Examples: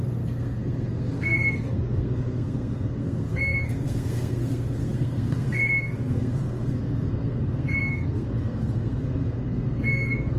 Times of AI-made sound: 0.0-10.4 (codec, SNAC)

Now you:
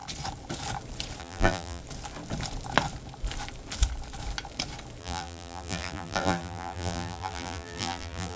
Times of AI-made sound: 1.2-1.8 (vocoder, BigVGAN v2); 5.0-8.4

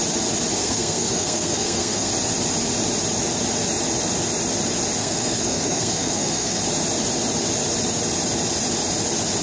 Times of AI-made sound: 0.6-2.1 (codec, SNAC); 5.0-6.6